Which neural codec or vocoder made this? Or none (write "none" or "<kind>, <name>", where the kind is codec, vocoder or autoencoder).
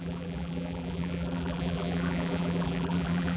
vocoder, BigVGAN v2